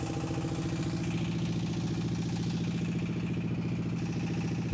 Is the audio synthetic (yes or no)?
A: no